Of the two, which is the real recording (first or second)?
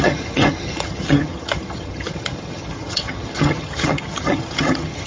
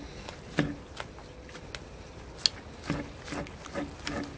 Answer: second